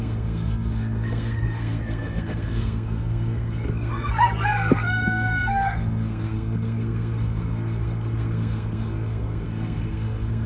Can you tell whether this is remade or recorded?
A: remade